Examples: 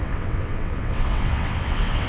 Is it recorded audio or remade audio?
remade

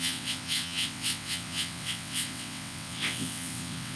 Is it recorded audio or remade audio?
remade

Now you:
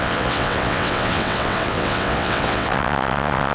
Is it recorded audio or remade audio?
remade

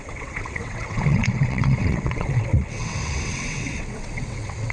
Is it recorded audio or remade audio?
remade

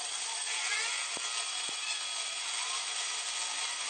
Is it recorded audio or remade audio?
recorded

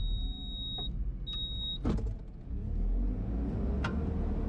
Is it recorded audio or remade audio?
recorded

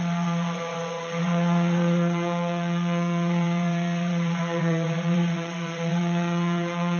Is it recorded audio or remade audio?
remade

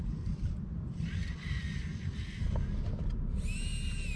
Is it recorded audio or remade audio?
recorded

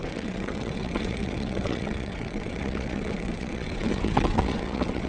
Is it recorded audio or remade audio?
remade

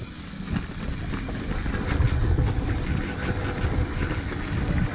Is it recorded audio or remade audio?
recorded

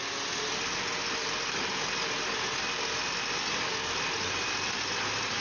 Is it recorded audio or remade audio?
recorded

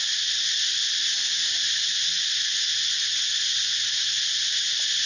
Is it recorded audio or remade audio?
recorded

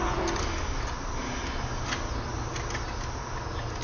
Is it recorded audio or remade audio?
recorded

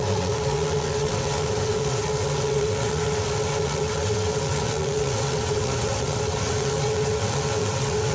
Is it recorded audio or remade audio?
remade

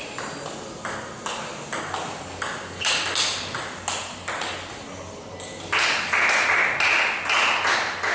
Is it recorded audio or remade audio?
recorded